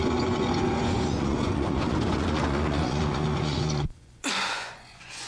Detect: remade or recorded remade